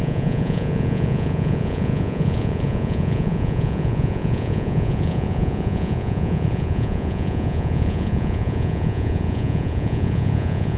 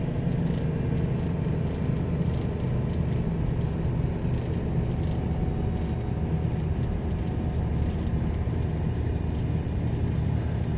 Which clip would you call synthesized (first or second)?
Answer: first